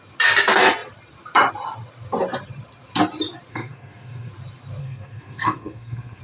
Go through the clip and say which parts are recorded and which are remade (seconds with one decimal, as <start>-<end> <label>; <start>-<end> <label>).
0.0-3.5 recorded; 3.5-4.3 remade; 4.3-4.8 recorded; 4.8-6.2 remade